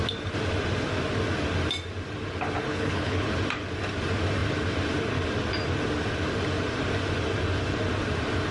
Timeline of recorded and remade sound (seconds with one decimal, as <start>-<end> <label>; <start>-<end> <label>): 0.0-2.7 recorded; 2.7-3.3 remade; 3.3-8.5 recorded